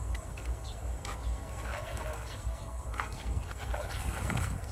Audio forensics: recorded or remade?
remade